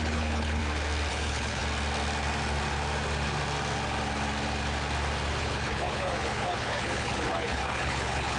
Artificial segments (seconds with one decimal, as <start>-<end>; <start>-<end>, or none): 0.0-0.6; 1.1-1.6; 5.4-8.4